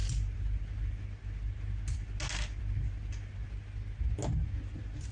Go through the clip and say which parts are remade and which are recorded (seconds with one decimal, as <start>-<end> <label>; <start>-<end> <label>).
0.0-5.1 recorded